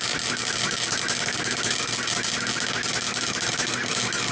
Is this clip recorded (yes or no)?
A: yes